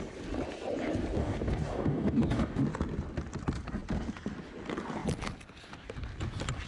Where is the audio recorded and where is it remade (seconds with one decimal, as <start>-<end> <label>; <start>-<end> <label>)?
0.0-1.2 recorded; 1.2-2.6 remade; 2.6-6.7 recorded